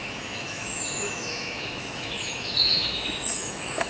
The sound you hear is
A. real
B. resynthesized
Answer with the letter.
B